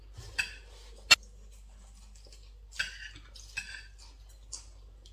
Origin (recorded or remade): recorded